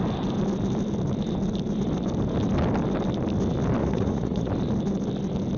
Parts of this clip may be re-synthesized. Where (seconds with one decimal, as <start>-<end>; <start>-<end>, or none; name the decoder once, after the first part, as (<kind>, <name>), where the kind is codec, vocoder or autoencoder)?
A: 3.8-4.5 (vocoder, Vocos)